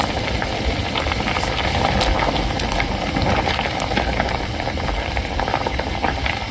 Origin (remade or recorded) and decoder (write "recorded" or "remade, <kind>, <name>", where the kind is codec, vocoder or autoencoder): remade, vocoder, BigVGAN v2